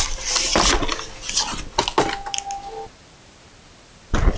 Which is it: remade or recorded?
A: recorded